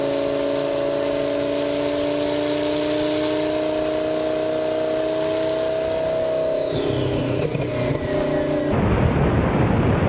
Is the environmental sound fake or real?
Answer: real